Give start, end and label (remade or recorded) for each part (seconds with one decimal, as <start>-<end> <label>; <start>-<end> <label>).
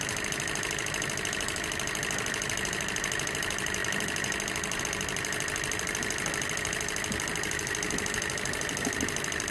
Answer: 0.0-9.5 recorded